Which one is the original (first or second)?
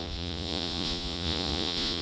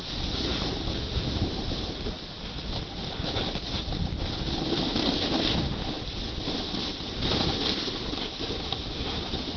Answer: second